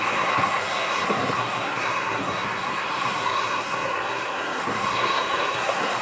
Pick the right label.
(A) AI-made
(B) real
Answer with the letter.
A